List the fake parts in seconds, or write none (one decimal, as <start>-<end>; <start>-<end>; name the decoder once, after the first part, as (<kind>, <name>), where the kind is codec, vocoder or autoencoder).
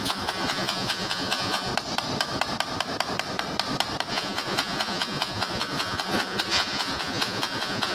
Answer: 0.0-1.7 (vocoder, Vocos); 4.1-7.9